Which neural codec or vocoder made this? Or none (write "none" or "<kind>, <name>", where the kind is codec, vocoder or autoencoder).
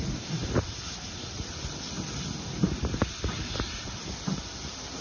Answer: none